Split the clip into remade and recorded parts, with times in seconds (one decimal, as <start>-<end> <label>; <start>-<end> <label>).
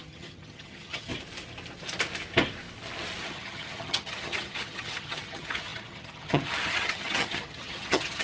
0.0-1.1 remade; 1.1-3.2 recorded; 3.2-8.2 remade